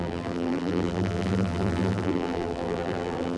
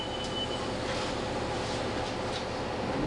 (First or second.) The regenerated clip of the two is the first